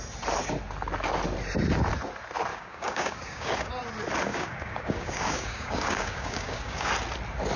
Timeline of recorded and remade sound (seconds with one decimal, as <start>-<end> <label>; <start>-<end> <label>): 0.0-2.5 recorded; 2.5-3.7 remade; 3.7-4.3 recorded; 4.3-6.9 remade; 6.9-7.6 recorded